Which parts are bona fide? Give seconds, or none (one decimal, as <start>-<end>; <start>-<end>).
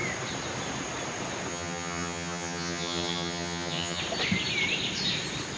0.0-1.5; 4.0-5.6